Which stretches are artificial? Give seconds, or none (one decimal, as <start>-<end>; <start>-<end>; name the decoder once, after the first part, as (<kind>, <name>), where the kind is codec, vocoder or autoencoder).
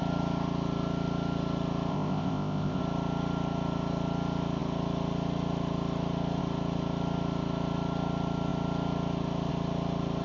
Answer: 1.9-2.8 (codec, ZipCodec)